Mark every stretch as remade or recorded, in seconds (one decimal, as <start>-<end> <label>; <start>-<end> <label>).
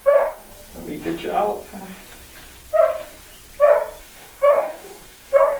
0.0-0.6 remade; 0.6-4.0 recorded; 4.0-5.6 remade